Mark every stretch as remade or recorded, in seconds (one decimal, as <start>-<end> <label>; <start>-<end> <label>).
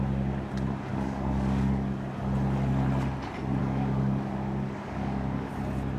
0.0-0.9 recorded; 0.9-2.1 remade; 2.1-3.6 recorded; 3.6-5.5 remade; 5.5-6.0 recorded